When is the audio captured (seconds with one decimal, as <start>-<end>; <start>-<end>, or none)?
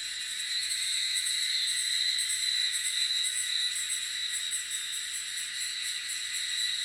0.0-0.6; 1.3-2.6; 3.7-6.8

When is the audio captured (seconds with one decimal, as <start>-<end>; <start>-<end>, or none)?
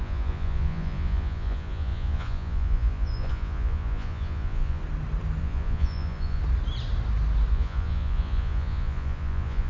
4.8-5.4; 6.4-7.5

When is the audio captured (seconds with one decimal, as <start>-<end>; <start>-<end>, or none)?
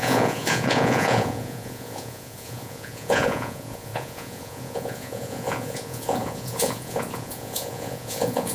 none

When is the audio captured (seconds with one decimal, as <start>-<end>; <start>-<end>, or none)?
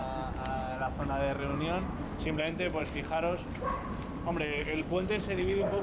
0.0-4.6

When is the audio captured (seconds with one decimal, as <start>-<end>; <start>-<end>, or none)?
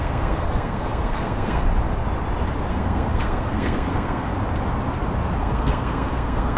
1.6-2.7; 4.3-5.4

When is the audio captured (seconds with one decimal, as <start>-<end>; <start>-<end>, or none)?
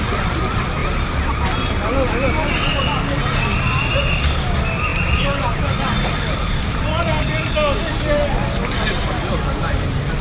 0.0-10.2